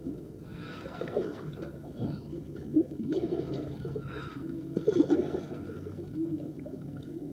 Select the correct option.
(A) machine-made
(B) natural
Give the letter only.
A